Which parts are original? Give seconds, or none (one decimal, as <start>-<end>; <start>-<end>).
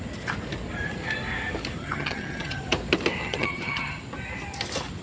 0.0-1.8; 2.6-3.2; 4.0-5.0